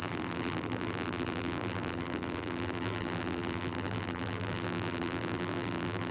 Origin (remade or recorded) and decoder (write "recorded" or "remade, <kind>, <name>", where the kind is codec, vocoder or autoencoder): remade, vocoder, BigVGAN v2